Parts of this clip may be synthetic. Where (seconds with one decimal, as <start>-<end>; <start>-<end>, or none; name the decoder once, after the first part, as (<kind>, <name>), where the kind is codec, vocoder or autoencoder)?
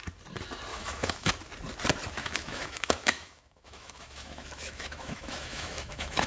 0.7-1.3 (autoencoder, DAC-VAE); 2.2-6.3